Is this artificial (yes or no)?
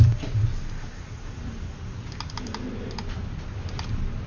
no